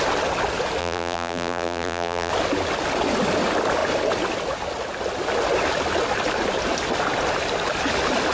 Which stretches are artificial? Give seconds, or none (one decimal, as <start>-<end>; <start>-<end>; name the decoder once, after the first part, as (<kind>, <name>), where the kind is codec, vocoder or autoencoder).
0.8-2.3 (vocoder, BigVGAN v2)